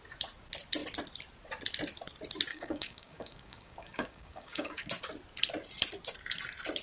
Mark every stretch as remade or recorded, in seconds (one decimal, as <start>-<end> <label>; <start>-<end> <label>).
0.0-2.5 recorded; 2.5-4.9 remade; 4.9-6.8 recorded